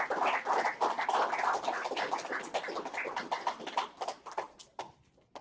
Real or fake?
real